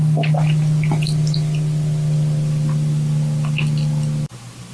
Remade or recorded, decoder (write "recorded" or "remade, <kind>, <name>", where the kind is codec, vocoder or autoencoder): recorded